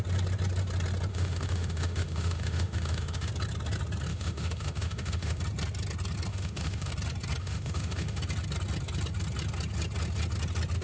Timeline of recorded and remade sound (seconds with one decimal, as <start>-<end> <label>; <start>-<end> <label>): 0.0-1.1 recorded; 1.1-3.3 remade; 3.3-4.1 recorded; 4.1-5.4 remade; 5.4-6.3 recorded; 6.3-6.9 remade; 6.9-7.4 recorded; 7.4-8.2 remade; 8.2-10.8 recorded

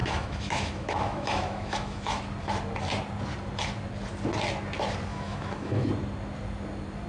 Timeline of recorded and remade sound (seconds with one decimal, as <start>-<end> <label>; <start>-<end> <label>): 0.0-2.2 remade; 2.2-5.1 recorded; 5.1-5.9 remade; 5.9-7.1 recorded

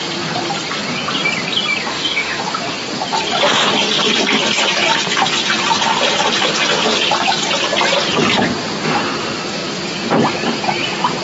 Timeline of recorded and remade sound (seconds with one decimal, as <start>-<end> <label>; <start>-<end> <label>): 0.0-1.9 recorded; 1.9-2.4 remade; 2.4-11.2 recorded

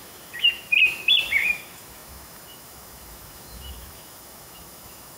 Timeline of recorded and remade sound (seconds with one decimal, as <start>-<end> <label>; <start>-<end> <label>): 0.0-0.7 remade; 0.7-1.2 recorded; 1.2-5.2 remade

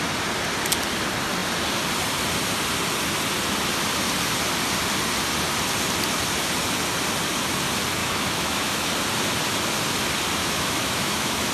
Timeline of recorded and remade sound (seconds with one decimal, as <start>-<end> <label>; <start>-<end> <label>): 0.0-8.0 recorded; 8.0-8.9 remade; 8.9-10.4 recorded; 10.4-11.5 remade

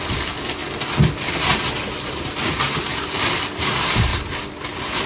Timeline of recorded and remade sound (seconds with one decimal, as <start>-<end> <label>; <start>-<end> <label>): 0.0-5.1 recorded